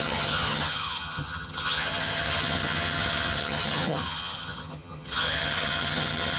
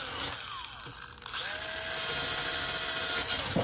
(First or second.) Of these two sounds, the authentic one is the second